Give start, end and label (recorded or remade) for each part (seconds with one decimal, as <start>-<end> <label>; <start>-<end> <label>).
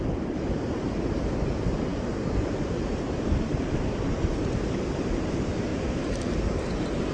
0.0-7.1 remade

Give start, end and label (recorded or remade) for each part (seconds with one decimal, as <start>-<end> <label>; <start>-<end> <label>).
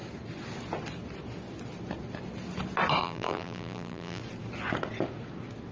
0.0-3.0 recorded; 3.0-4.2 remade; 4.2-5.7 recorded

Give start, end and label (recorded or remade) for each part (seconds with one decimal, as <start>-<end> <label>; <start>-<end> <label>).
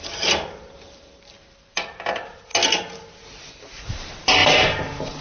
0.0-2.5 remade; 2.5-3.4 recorded; 3.4-5.2 remade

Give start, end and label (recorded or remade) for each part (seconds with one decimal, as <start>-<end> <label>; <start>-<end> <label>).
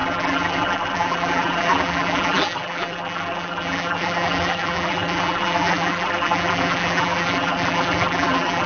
0.0-8.7 remade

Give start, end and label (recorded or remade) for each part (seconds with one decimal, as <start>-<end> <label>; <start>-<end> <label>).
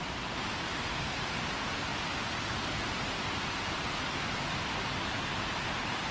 0.0-6.1 remade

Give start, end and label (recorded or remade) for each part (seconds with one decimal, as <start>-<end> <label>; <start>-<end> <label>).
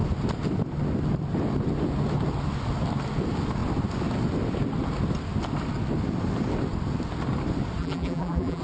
0.0-7.8 recorded; 7.8-8.6 remade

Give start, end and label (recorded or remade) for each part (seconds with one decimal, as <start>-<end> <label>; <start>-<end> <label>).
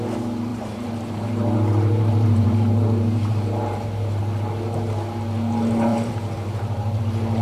0.0-0.5 recorded; 0.5-4.2 remade; 4.2-5.9 recorded; 5.9-7.0 remade; 7.0-7.4 recorded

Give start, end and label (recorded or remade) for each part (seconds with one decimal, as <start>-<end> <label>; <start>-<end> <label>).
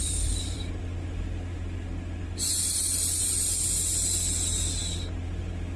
0.0-0.8 remade; 0.8-5.8 recorded